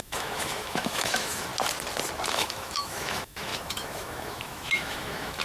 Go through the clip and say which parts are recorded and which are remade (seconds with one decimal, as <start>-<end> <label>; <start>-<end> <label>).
0.0-1.5 remade; 1.5-2.3 recorded; 2.3-5.4 remade